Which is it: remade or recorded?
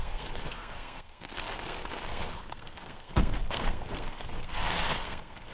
remade